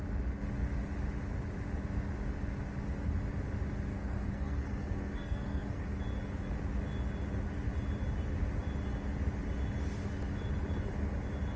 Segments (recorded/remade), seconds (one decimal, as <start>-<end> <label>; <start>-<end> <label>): 0.0-3.9 recorded; 3.9-6.0 remade; 6.0-11.6 recorded